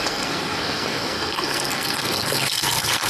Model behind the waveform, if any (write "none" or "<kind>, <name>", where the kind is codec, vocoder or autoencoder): codec, SNAC